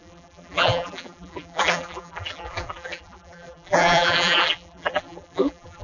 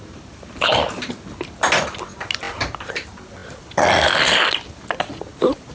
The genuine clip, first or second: second